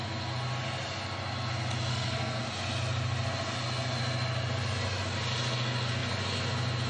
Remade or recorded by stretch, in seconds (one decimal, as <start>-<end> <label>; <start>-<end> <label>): 0.0-1.9 recorded; 1.9-2.4 remade; 2.4-6.9 recorded